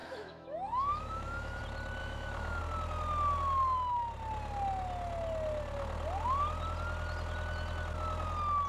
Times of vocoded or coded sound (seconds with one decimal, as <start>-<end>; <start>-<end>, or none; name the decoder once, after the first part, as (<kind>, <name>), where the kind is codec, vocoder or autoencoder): 0.0-1.6 (autoencoder, DAC-VAE); 2.0-2.6